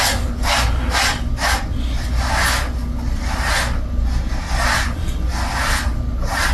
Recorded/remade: recorded